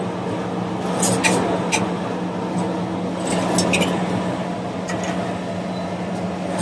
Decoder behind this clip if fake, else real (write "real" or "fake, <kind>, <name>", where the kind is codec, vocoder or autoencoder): real